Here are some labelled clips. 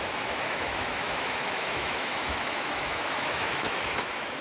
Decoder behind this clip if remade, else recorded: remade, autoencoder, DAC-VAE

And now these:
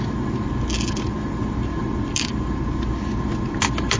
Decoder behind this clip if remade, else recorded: recorded